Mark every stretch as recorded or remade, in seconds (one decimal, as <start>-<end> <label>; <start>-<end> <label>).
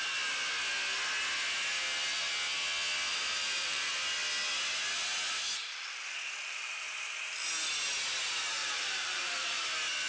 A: 0.0-3.1 recorded; 3.1-3.9 remade; 3.9-8.6 recorded; 8.6-9.6 remade; 9.6-10.1 recorded